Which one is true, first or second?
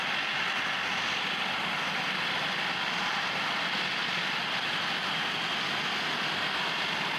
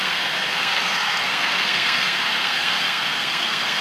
first